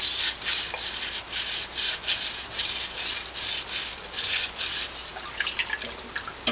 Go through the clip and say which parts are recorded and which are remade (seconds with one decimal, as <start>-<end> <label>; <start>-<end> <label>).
0.0-4.0 recorded; 4.0-4.6 remade; 4.6-6.5 recorded